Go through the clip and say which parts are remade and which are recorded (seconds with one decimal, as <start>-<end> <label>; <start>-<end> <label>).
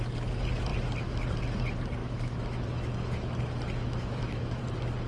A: 0.0-2.0 recorded; 2.0-3.3 remade; 3.3-3.8 recorded; 3.8-4.6 remade; 4.6-5.1 recorded